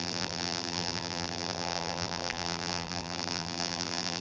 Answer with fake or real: fake